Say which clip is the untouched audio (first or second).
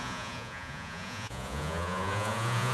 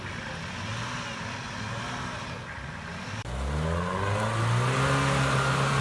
second